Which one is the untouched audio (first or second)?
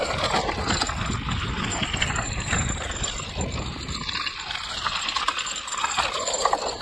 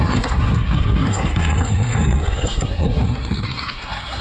first